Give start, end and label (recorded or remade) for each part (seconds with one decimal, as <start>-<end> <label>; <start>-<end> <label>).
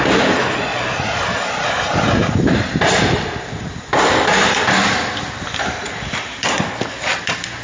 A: 0.0-0.7 recorded; 0.7-3.2 remade; 3.2-7.6 recorded